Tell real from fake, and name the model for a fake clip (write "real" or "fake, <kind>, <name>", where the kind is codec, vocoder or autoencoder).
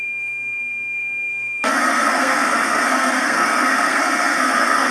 fake, codec, SNAC